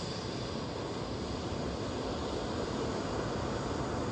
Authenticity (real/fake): real